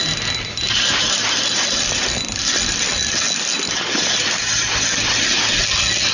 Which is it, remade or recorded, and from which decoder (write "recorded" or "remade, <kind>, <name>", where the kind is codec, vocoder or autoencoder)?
recorded